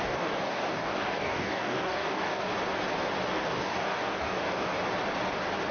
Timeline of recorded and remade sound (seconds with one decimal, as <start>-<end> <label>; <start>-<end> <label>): 0.0-2.5 remade; 2.5-3.3 recorded; 3.3-4.7 remade; 4.7-5.7 recorded